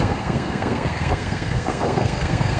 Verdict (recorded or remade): remade